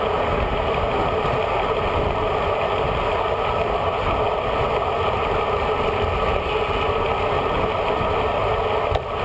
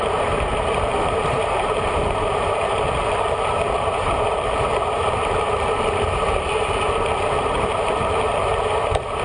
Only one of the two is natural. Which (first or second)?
first